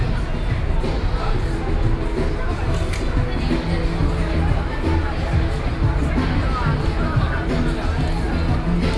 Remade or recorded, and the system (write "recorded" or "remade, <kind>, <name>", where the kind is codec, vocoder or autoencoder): recorded